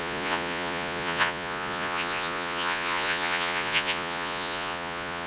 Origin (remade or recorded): remade